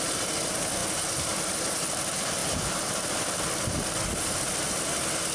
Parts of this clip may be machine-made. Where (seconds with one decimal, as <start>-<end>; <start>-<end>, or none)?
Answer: none